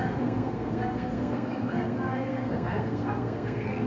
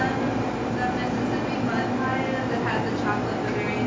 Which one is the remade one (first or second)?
first